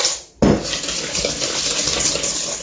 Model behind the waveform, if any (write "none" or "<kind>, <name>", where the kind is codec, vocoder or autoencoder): none